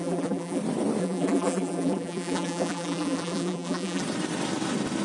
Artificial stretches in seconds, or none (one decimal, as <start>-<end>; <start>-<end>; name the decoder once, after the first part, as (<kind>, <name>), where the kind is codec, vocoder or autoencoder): 0.0-0.6 (vocoder, BigVGAN v2); 1.0-4.0